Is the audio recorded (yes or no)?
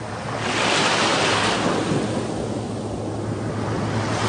yes